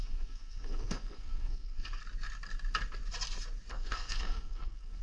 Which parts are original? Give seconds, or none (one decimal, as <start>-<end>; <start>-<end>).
2.0-3.7